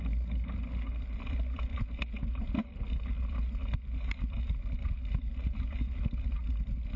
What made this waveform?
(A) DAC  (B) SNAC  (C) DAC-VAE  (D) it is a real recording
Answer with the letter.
D